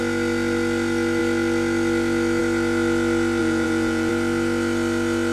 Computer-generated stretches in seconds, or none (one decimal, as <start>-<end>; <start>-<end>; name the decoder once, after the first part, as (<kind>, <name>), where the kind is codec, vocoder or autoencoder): 3.4-4.1 (vocoder, Vocos)